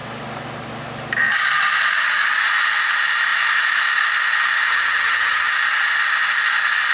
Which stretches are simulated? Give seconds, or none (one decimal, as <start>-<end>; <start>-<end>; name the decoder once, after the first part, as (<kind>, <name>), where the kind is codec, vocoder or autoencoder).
4.7-5.5 (vocoder, HiFi-GAN)